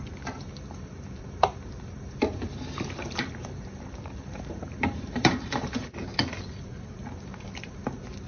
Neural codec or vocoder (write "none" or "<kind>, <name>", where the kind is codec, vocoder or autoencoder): vocoder, BigVGAN v2